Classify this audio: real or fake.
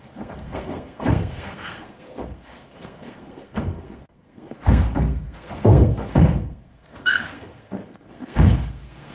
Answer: fake